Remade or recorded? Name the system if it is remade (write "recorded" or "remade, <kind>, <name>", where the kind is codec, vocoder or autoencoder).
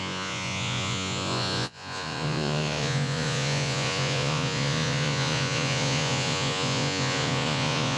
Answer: remade, vocoder, Vocos